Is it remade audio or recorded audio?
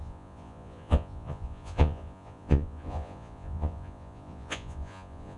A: remade